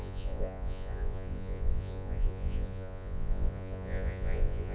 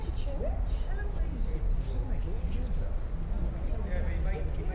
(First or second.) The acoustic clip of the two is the second